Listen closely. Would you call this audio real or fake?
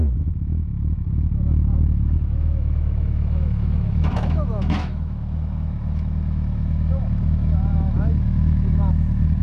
fake